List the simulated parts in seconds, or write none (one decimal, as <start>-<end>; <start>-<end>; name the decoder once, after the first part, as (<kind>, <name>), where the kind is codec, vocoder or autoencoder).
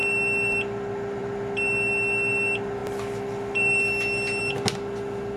none